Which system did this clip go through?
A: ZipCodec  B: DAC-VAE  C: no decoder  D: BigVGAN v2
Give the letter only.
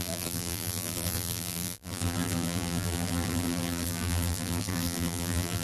D